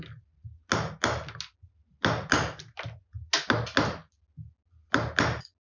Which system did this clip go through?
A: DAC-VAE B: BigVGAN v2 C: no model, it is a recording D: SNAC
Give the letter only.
C